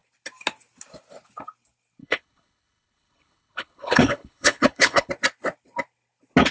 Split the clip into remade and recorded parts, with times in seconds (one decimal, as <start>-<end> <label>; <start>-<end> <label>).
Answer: 0.0-2.0 recorded; 2.0-5.1 remade; 5.1-6.5 recorded